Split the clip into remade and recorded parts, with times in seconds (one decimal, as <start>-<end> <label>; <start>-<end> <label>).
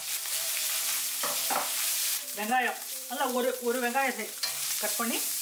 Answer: 0.0-0.6 remade; 0.6-1.5 recorded; 1.5-5.4 remade